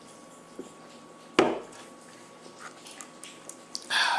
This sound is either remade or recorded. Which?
recorded